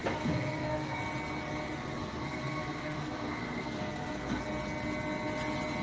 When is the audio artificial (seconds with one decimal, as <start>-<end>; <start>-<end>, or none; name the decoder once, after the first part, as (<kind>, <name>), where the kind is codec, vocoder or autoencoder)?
0.0-1.0 (codec, SNAC); 2.0-4.4